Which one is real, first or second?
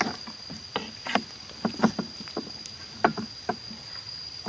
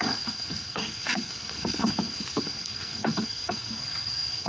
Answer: first